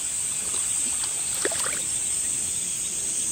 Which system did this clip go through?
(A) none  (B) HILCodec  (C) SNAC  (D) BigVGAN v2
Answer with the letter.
A